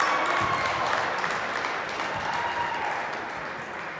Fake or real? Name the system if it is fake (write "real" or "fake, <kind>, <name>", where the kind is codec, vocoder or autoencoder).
real